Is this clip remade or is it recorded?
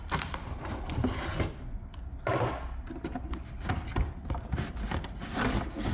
recorded